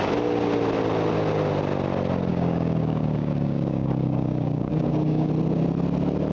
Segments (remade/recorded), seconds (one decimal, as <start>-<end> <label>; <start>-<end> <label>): 0.0-2.3 recorded; 2.3-5.3 remade; 5.3-6.3 recorded